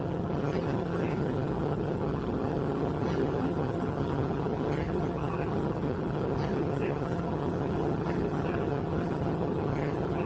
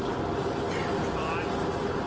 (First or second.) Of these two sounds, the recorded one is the second